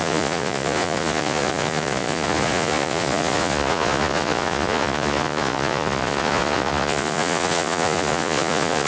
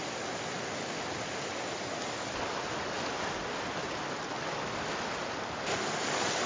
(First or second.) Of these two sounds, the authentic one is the second